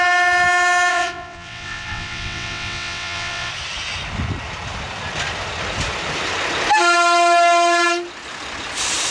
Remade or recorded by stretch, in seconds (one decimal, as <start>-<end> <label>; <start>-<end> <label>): 0.0-0.9 recorded; 0.9-3.5 remade; 3.5-9.1 recorded